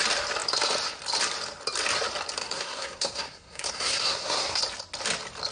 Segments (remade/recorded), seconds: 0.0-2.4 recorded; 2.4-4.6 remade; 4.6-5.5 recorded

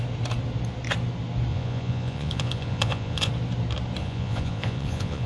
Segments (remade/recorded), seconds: 0.0-1.5 recorded; 1.5-3.3 remade; 3.3-4.0 recorded; 4.0-5.3 remade

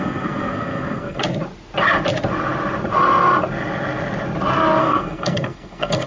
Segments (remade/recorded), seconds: 0.0-1.2 remade; 1.2-4.8 recorded; 4.8-6.1 remade

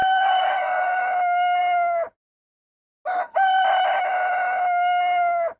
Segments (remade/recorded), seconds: 0.0-1.0 remade; 1.0-5.6 recorded

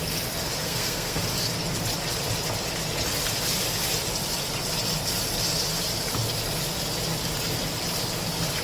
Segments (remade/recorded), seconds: 0.0-0.6 recorded; 0.6-1.2 remade; 1.2-8.6 recorded